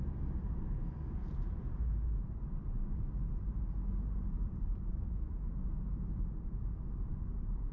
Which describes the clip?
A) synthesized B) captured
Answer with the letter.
A